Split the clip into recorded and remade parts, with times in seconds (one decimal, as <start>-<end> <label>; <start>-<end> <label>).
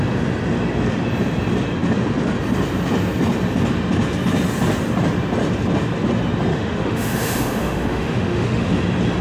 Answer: 0.0-6.5 recorded; 6.5-8.7 remade; 8.7-9.2 recorded